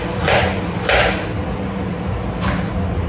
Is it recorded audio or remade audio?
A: recorded